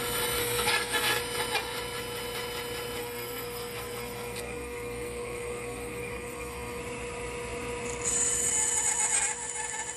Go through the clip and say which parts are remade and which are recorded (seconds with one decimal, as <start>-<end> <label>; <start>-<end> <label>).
0.0-0.4 recorded; 0.4-1.2 remade; 1.2-3.0 recorded; 3.0-6.8 remade; 6.8-10.0 recorded